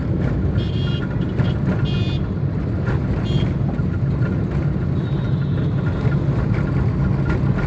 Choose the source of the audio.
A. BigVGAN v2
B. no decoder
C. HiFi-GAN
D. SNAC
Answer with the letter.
B